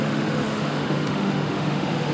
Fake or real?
fake